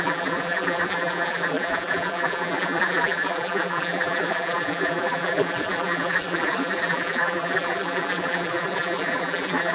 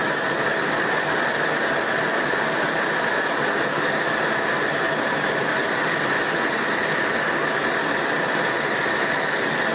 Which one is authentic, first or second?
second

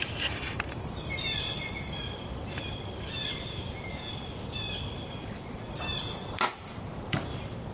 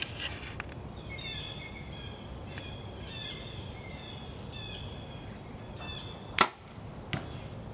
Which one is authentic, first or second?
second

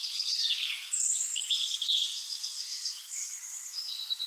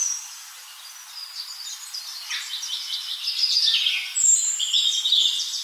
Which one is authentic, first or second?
second